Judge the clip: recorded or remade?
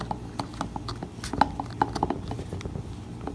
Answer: recorded